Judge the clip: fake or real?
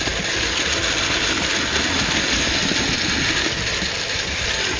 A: real